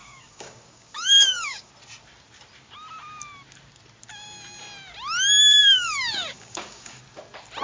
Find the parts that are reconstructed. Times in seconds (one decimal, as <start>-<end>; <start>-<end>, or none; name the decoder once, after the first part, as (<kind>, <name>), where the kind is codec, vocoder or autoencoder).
0.0-1.7 (codec, DAC); 5.6-7.0